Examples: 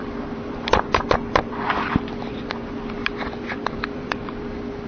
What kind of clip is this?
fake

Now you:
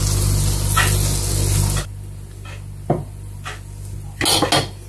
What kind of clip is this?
real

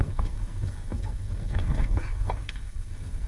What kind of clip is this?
fake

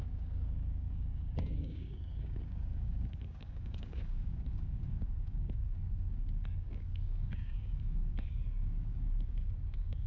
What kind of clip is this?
fake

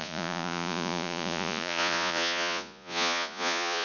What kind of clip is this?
fake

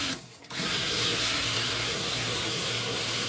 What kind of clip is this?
fake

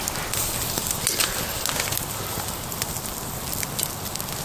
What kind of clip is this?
real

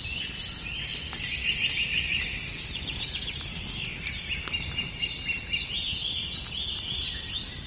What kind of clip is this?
real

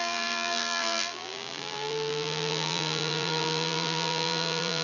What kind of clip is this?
fake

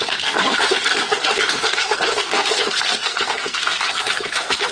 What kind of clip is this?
fake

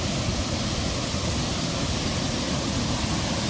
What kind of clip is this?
real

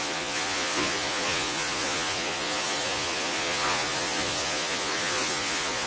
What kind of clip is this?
fake